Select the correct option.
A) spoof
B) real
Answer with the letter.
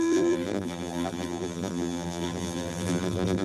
A